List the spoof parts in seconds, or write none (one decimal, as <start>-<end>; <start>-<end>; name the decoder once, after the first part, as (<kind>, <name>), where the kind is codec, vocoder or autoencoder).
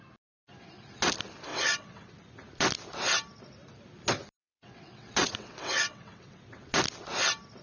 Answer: 1.5-2.1 (vocoder, WaveNeXt); 4.4-6.7